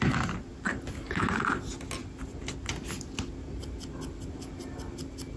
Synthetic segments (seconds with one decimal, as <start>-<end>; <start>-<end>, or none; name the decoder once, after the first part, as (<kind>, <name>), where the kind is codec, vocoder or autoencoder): none